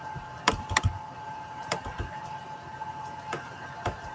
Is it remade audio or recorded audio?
remade